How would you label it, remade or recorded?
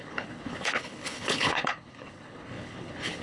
remade